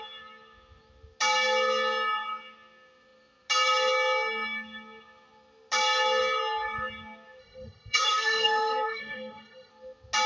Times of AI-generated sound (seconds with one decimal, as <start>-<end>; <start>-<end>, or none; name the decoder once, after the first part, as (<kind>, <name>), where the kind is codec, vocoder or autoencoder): 7.4-9.7 (autoencoder, DAC-VAE)